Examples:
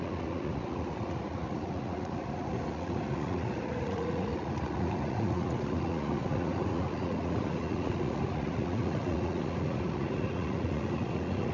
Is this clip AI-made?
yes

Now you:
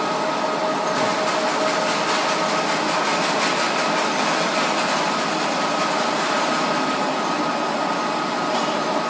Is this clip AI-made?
no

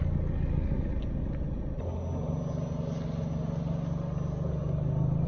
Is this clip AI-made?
no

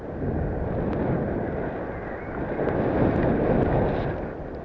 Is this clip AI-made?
no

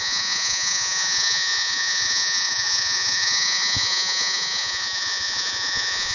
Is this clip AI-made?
yes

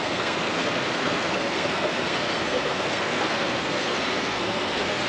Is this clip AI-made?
yes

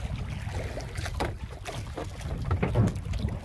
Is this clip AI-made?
no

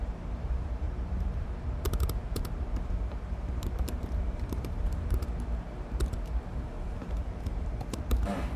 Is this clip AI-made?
yes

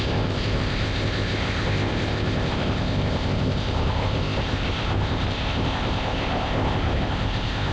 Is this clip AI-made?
yes